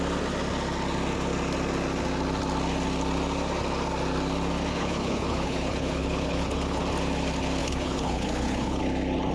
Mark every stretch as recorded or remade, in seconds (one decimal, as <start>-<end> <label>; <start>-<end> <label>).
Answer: 0.0-4.7 recorded; 4.7-6.8 remade; 6.8-7.6 recorded; 7.6-8.8 remade; 8.8-9.3 recorded